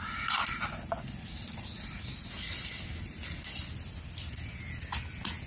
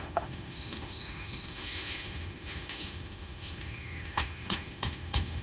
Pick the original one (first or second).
first